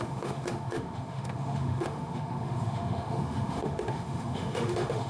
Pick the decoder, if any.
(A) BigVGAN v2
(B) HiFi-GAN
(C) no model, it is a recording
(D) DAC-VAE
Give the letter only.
D